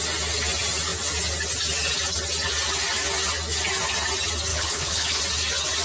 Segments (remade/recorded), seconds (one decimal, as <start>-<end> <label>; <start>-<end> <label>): 0.0-4.5 recorded; 4.5-5.2 remade; 5.2-5.8 recorded